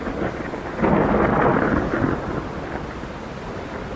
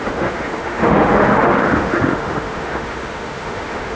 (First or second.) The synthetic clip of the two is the second